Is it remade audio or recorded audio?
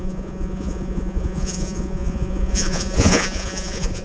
remade